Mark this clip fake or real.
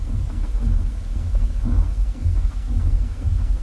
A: fake